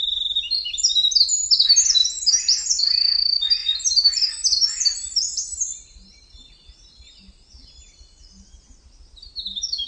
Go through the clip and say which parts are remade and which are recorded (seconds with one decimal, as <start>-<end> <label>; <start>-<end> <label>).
0.0-2.0 recorded; 2.0-2.8 remade; 2.8-3.6 recorded; 3.6-8.5 remade; 8.5-9.9 recorded

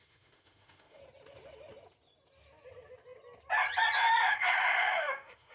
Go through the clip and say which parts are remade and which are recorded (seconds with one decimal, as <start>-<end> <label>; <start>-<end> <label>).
0.0-1.0 remade; 1.0-4.3 recorded; 4.3-5.5 remade